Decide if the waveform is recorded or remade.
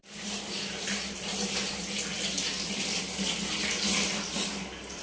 recorded